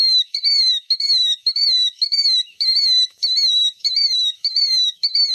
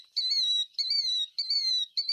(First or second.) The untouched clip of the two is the second